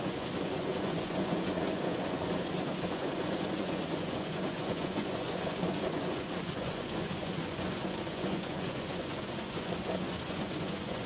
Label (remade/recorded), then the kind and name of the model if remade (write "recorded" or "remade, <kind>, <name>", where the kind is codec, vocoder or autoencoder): remade, vocoder, Vocos